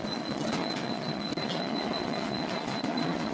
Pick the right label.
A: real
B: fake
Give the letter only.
B